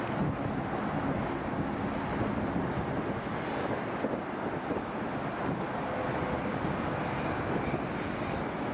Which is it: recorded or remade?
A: recorded